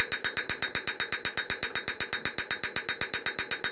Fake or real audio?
real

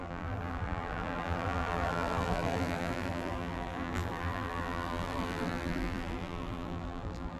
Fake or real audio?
fake